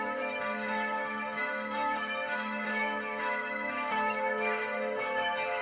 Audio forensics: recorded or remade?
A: remade